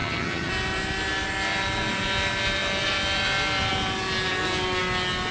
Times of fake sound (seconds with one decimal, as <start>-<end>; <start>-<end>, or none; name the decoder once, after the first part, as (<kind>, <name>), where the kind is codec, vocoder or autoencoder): 0.0-0.5 (vocoder, HiFi-GAN)